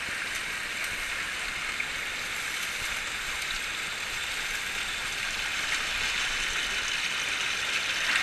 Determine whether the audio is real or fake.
real